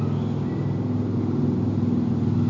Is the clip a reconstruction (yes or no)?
no